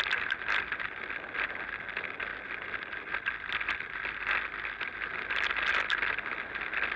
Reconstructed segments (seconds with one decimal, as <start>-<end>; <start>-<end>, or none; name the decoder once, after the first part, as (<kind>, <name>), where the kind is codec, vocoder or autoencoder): none